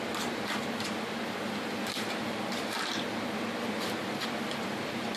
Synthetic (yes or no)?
yes